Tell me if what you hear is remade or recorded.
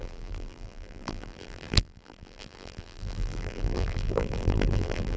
remade